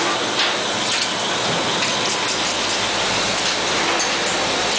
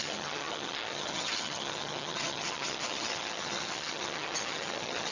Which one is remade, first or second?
second